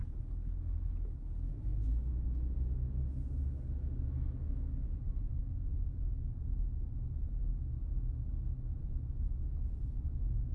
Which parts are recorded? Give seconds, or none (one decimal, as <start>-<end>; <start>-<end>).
0.0-10.5